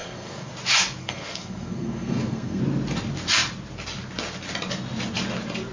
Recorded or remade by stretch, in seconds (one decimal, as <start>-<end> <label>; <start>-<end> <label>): 0.0-0.5 remade; 0.5-1.0 recorded; 1.0-2.6 remade; 2.6-5.7 recorded